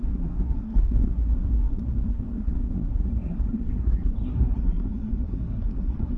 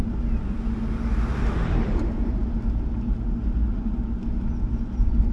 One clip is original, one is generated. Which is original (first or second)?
second